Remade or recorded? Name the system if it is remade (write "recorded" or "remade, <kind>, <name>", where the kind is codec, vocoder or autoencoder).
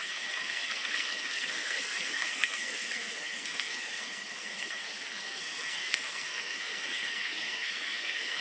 remade, codec, SNAC